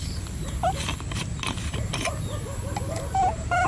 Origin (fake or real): real